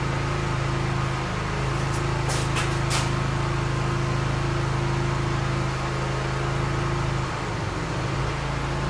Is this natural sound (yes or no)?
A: yes